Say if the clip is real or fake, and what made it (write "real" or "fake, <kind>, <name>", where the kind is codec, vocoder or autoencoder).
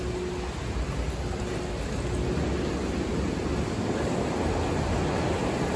real